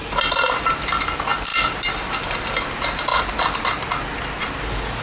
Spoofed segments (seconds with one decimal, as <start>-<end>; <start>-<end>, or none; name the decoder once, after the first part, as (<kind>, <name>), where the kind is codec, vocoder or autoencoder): none